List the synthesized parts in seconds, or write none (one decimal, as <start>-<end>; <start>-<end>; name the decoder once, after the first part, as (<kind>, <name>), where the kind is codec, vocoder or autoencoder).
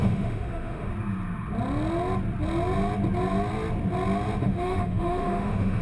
0.0-0.9 (autoencoder, DAC-VAE); 4.4-5.8